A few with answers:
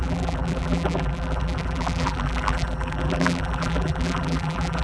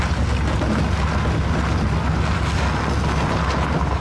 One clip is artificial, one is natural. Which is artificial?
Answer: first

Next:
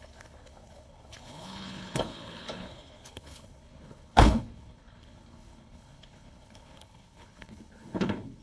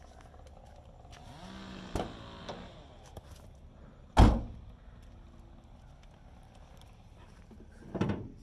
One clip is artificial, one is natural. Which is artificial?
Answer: first